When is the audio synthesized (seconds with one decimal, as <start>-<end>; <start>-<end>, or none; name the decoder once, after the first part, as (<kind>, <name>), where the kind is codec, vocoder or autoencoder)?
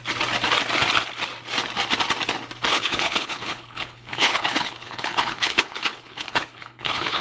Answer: 2.7-7.2 (codec, HILCodec)